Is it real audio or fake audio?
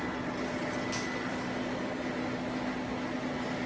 real